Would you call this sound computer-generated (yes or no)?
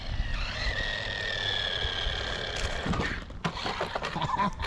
no